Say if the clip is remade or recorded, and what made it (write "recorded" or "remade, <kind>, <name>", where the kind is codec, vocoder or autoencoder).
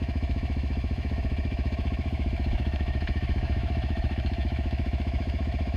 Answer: remade, autoencoder, DAC-VAE